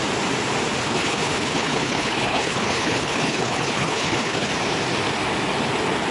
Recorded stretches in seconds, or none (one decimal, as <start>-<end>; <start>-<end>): 0.0-0.8; 4.5-6.1